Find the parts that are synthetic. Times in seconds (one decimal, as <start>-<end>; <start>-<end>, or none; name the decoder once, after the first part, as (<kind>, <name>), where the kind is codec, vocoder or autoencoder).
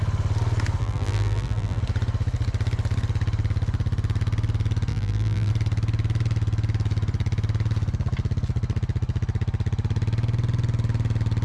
0.8-1.8 (vocoder, BigVGAN v2); 4.9-5.5